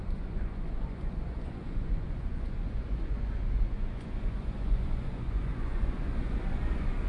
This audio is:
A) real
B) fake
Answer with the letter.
B